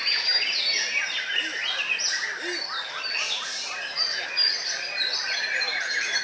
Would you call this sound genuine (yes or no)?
yes